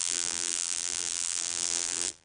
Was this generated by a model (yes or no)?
yes